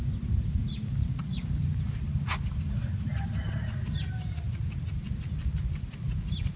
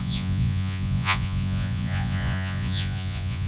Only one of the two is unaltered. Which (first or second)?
first